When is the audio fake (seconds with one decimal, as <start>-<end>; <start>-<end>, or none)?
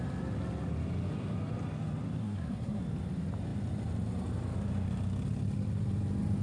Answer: 2.2-2.8